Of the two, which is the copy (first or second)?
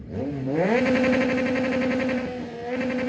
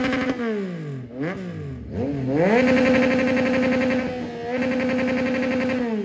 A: first